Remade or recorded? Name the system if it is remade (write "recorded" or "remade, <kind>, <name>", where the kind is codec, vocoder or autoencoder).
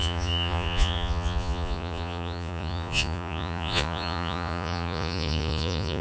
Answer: remade, vocoder, Vocos